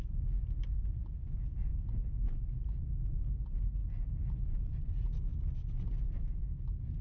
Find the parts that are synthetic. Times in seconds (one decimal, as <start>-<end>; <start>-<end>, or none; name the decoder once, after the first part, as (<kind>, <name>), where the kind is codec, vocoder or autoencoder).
0.0-1.7 (vocoder, BigVGAN v2); 2.8-3.8; 4.4-5.3

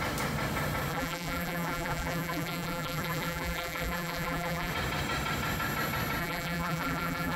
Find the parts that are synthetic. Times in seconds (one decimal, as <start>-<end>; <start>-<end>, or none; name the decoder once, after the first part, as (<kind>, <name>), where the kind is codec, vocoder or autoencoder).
0.9-4.7 (vocoder, BigVGAN v2); 6.2-7.4

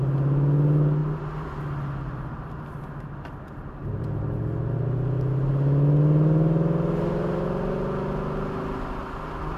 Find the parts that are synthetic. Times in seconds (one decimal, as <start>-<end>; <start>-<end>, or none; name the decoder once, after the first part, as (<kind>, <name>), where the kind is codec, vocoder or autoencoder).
3.8-4.4 (vocoder, BigVGAN v2)

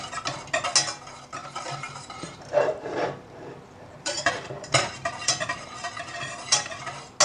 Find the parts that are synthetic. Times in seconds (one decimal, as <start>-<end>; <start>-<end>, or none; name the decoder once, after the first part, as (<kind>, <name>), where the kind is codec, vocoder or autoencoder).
1.4-5.3 (vocoder, BigVGAN v2)

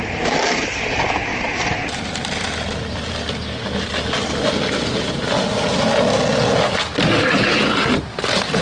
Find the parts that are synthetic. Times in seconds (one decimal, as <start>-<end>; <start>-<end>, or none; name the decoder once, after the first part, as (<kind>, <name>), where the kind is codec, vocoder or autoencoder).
1.3-3.1 (vocoder, BigVGAN v2)